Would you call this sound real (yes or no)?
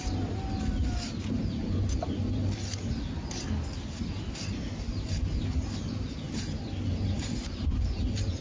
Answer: yes